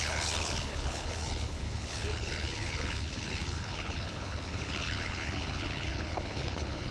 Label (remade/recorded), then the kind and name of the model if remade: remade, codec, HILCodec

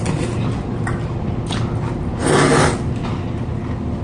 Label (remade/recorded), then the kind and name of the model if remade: recorded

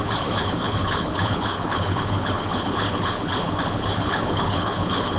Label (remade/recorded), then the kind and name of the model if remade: remade, codec, HILCodec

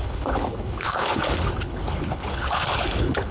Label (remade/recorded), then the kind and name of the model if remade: remade, codec, HILCodec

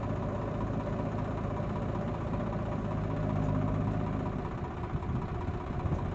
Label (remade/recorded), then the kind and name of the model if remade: recorded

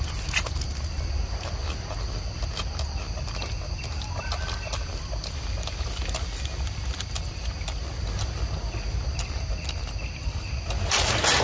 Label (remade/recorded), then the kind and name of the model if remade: recorded